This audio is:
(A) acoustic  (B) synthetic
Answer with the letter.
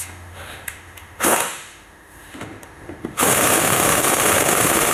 B